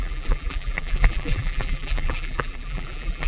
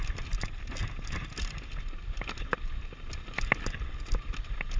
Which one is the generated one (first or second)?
first